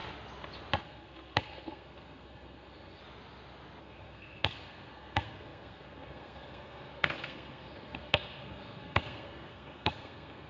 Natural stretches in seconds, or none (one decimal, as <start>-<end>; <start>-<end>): 0.0-0.8; 3.0-3.8